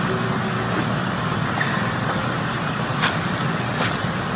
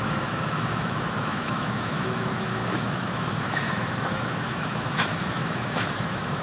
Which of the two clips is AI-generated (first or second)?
second